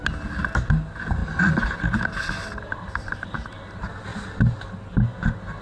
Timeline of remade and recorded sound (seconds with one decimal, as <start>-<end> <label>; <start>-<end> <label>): 0.0-5.6 recorded